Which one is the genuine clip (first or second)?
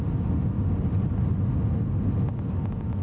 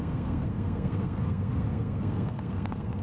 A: first